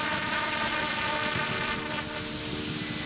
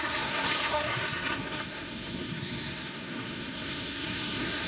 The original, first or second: first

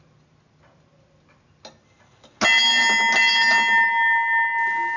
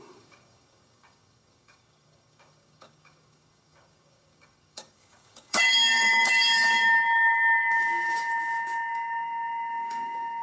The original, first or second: first